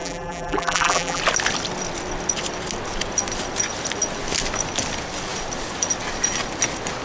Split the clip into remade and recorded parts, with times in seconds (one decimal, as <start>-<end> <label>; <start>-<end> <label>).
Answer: 0.0-1.2 remade; 1.2-7.0 recorded